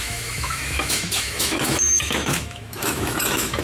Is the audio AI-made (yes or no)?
yes